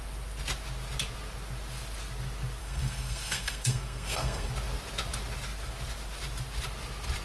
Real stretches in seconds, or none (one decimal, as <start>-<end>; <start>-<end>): 0.0-2.6; 4.5-7.2